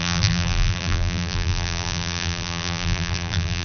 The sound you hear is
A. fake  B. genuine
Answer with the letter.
A